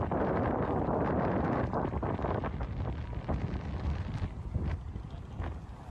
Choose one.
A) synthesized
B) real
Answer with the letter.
B